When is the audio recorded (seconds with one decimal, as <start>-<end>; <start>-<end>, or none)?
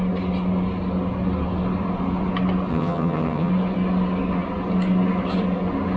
0.0-2.7; 3.5-6.0